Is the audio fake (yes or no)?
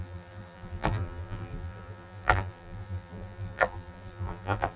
yes